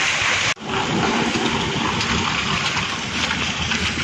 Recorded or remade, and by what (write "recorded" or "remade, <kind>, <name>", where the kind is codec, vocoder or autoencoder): recorded